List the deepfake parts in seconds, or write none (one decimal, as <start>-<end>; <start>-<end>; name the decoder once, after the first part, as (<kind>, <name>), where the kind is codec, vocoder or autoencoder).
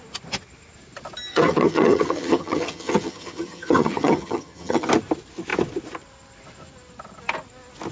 1.3-4.9 (vocoder, HiFi-GAN)